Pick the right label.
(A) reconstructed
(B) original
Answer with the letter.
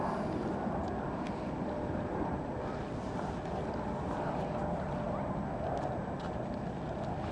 B